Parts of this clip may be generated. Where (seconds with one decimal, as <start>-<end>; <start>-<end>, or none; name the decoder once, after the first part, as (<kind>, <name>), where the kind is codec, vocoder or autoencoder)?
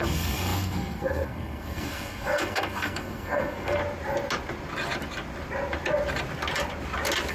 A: 0.0-3.8 (codec, SNAC)